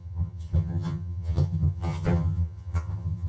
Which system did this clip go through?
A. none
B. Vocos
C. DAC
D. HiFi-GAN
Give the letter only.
D